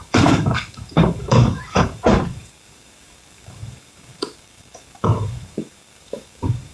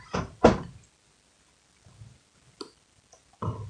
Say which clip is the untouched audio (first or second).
second